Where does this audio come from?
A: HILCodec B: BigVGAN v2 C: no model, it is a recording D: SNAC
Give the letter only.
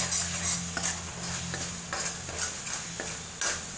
C